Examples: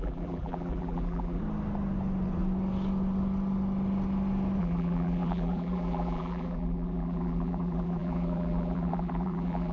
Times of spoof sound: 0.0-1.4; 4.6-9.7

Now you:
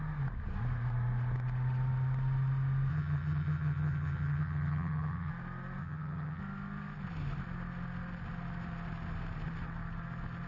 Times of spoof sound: 2.9-5.3; 5.8-6.4

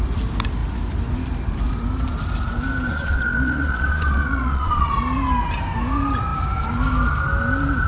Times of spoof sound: 2.9-4.9

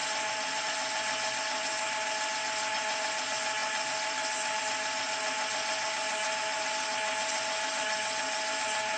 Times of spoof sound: none

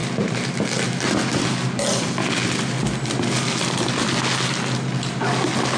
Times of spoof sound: none